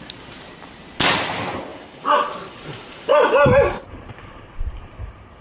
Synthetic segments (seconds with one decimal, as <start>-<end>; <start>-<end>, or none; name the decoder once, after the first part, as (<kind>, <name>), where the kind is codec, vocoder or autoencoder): 1.7-4.9 (vocoder, BigVGAN v2)